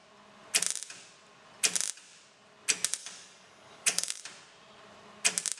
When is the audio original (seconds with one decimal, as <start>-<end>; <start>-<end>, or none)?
0.0-3.0; 4.2-5.6